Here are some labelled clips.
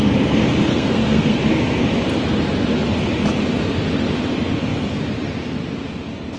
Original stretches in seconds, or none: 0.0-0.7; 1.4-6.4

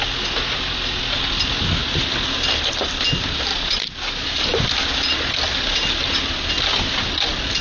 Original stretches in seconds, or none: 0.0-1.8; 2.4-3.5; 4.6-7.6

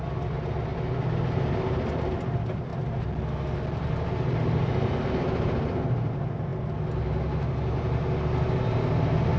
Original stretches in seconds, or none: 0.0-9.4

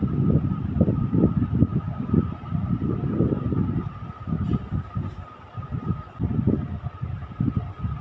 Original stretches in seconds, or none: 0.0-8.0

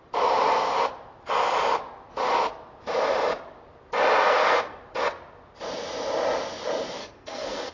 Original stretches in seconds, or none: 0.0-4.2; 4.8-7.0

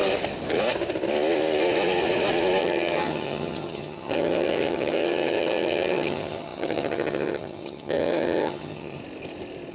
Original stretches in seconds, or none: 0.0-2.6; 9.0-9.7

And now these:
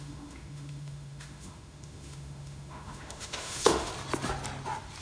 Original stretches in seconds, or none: 3.9-5.0

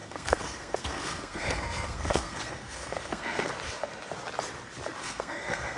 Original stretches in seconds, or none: 3.5-5.0